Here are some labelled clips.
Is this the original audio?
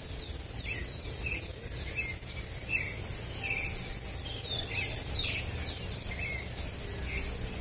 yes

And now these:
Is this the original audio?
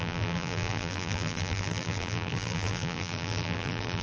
no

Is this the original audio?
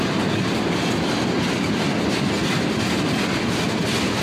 yes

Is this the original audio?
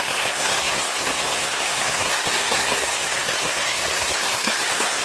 no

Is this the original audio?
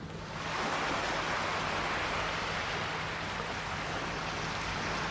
yes